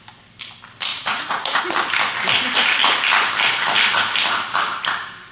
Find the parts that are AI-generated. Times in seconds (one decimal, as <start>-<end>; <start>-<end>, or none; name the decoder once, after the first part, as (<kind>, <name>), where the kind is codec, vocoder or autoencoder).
0.9-1.6 (vocoder, Vocos)